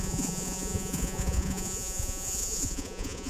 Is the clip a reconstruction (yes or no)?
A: yes